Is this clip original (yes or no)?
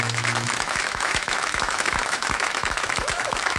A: no